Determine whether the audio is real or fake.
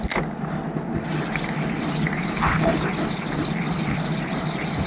real